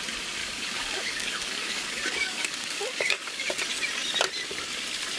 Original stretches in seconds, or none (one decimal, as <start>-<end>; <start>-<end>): 0.0-0.4; 3.5-5.2